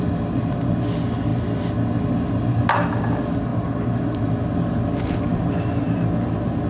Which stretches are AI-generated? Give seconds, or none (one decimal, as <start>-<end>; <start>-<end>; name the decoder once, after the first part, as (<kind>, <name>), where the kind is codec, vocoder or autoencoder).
none